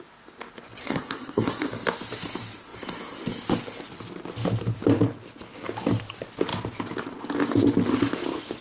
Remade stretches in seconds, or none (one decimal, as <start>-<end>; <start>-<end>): 0.8-1.7

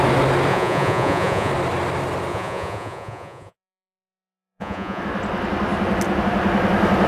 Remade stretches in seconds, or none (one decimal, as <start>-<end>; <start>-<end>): 0.5-1.5; 2.3-5.0

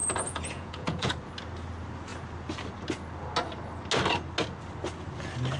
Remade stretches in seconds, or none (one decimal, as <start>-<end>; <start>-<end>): 0.0-1.1

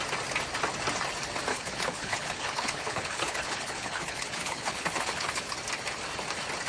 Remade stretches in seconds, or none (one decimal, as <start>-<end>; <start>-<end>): 1.5-5.5

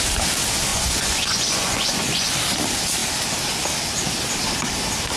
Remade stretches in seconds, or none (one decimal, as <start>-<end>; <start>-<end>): 0.7-2.3

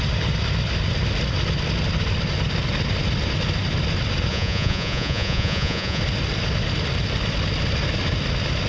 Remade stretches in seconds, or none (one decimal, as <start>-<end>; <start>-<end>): 4.3-6.0